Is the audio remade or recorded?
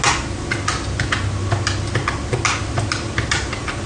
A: recorded